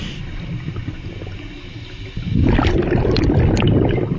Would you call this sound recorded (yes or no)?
yes